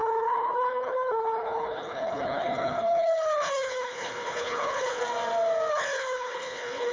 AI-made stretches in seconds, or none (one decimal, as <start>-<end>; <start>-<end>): 0.0-5.0; 5.7-6.9